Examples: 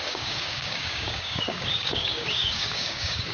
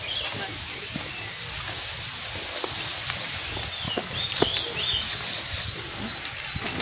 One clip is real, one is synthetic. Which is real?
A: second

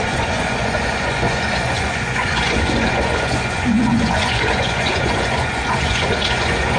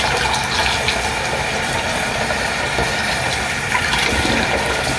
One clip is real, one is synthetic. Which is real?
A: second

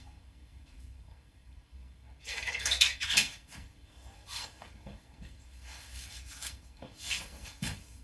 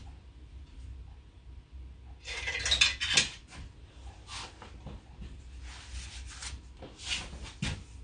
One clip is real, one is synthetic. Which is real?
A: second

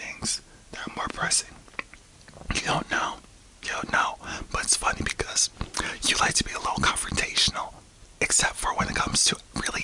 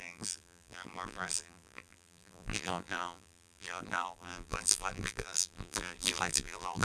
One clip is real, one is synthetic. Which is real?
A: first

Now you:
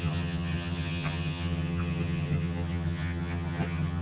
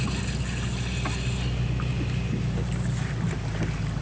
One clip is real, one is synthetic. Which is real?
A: second